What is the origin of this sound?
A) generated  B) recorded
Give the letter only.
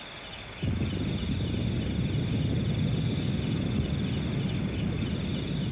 B